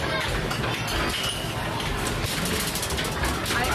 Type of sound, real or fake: real